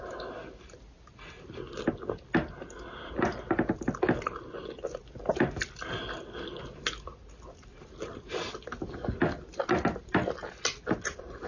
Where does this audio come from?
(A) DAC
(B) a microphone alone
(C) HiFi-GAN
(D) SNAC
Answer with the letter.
B